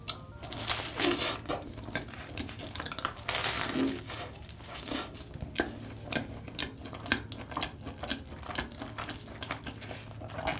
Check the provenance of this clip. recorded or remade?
recorded